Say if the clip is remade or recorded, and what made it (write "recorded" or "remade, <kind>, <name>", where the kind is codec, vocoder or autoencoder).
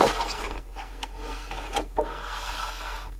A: remade, codec, SNAC